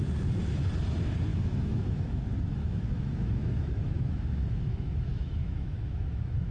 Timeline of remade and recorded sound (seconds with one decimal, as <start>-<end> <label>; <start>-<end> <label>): 0.0-1.3 recorded; 1.3-2.2 remade; 2.2-2.6 recorded; 2.6-6.5 remade